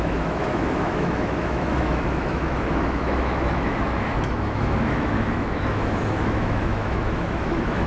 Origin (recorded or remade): remade